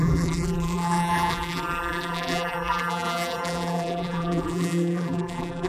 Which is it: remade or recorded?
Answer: remade